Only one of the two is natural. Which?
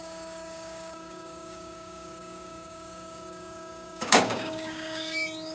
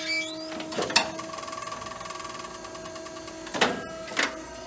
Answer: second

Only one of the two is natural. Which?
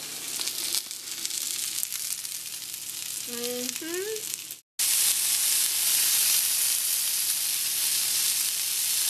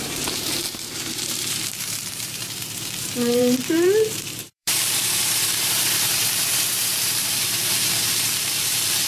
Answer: first